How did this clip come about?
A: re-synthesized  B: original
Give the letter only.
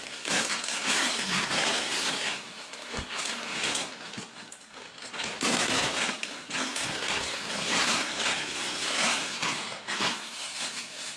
A